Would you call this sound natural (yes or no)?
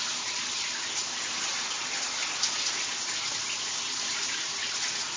yes